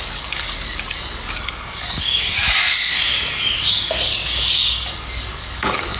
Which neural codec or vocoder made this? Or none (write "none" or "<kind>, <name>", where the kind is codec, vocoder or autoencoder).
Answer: codec, DAC